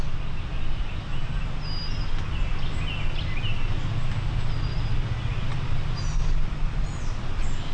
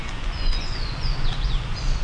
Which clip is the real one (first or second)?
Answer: first